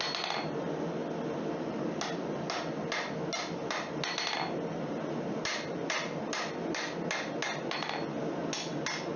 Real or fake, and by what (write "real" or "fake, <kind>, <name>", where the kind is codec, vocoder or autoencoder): real